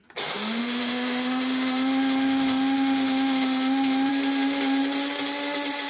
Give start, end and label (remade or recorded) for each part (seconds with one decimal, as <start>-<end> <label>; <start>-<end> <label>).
0.0-0.6 recorded; 0.6-4.1 remade; 4.1-5.9 recorded